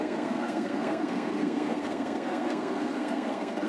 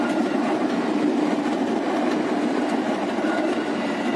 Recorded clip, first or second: second